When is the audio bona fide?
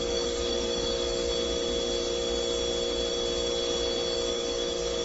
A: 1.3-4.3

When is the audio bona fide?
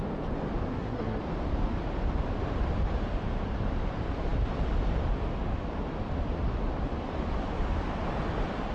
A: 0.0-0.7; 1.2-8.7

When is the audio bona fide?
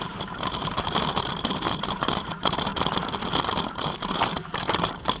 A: 2.7-3.7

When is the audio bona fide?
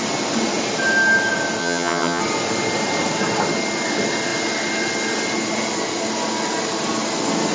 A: 0.0-1.6; 2.2-7.5